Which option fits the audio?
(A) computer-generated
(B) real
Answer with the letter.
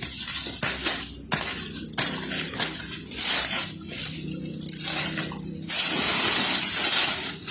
B